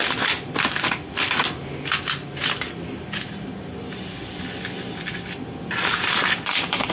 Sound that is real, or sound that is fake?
real